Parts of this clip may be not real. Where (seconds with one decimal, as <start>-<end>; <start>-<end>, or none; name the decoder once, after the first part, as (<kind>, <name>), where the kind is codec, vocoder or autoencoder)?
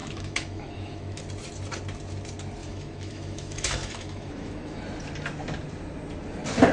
0.0-1.2 (autoencoder, DAC-VAE); 2.6-4.8